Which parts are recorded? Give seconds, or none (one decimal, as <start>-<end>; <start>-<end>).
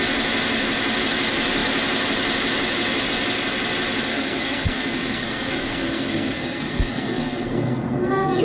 0.0-4.1